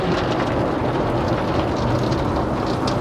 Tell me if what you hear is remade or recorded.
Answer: recorded